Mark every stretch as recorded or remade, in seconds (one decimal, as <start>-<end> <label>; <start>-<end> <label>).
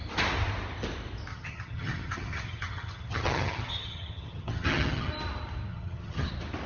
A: 0.0-1.3 recorded; 1.3-5.1 remade; 5.1-5.7 recorded; 5.7-6.3 remade; 6.3-6.7 recorded